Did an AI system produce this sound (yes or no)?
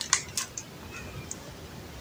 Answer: no